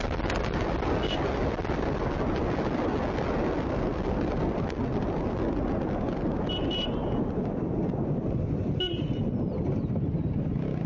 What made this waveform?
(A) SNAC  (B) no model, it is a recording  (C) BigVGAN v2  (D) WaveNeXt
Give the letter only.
B